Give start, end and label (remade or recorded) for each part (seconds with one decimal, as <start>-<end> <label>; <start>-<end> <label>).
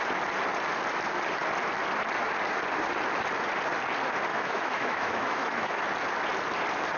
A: 0.0-4.3 recorded; 4.3-5.8 remade; 5.8-7.0 recorded